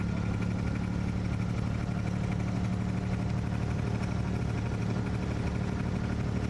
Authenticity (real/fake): real